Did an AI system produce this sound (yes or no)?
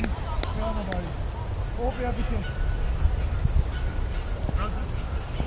no